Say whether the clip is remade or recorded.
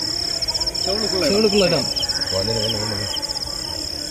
recorded